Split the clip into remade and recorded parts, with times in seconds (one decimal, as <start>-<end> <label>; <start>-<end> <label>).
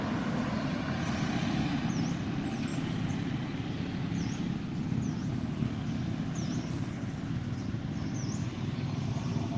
0.0-2.7 recorded; 2.7-4.4 remade; 4.4-8.4 recorded; 8.4-9.1 remade; 9.1-9.6 recorded